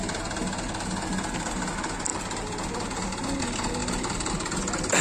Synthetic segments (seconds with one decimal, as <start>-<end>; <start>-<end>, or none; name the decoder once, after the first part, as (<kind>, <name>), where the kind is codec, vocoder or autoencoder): none